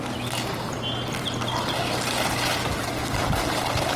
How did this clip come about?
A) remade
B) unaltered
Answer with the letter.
B